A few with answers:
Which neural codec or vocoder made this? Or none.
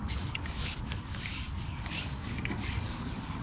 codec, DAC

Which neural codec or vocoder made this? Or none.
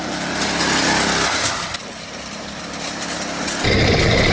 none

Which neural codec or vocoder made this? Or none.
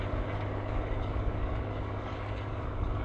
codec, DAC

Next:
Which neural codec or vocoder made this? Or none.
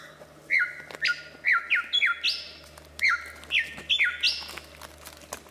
none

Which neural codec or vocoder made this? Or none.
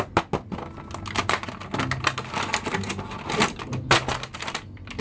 none